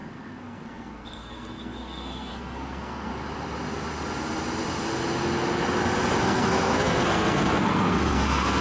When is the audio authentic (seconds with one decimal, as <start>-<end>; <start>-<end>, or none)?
3.1-6.2